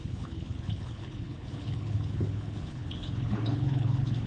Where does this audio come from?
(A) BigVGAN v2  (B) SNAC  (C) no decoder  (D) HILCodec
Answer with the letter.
D